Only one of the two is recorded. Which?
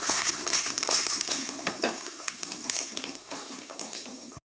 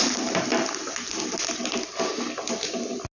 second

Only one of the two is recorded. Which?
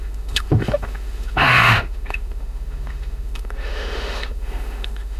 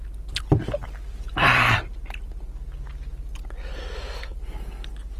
second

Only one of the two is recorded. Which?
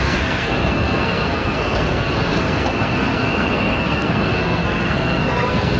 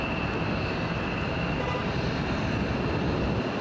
second